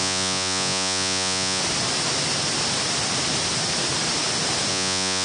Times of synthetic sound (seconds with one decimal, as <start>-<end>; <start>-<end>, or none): 0.0-1.6; 4.7-5.2